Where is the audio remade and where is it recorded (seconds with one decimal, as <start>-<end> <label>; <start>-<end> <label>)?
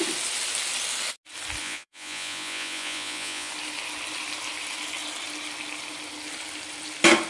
0.0-1.6 recorded; 1.6-3.5 remade; 3.5-7.3 recorded